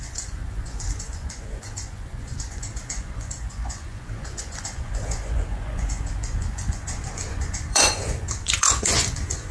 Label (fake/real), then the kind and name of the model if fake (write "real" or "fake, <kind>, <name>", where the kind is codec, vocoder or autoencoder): fake, vocoder, Vocos